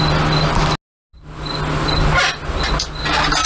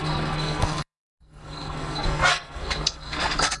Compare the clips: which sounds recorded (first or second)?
first